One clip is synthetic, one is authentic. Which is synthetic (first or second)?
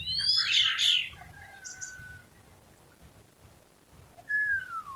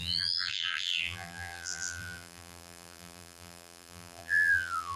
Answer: second